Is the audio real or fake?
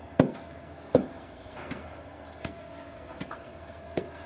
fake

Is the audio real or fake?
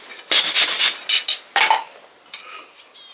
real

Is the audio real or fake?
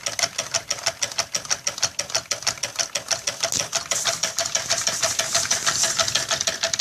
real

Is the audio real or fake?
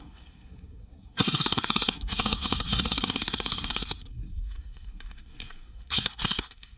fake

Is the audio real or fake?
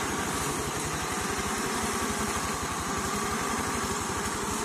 real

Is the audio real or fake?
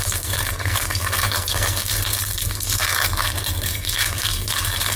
fake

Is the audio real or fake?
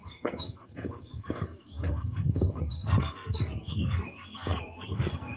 fake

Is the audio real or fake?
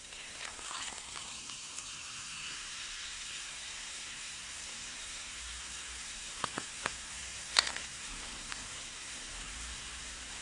fake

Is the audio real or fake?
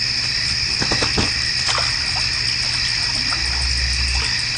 real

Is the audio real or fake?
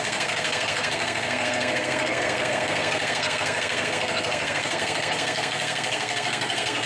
fake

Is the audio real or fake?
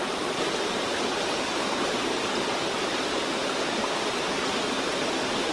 real